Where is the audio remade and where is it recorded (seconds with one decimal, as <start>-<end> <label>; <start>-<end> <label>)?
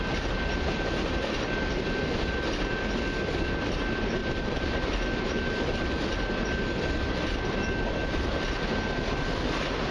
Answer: 0.0-4.2 recorded; 4.2-6.4 remade; 6.4-9.9 recorded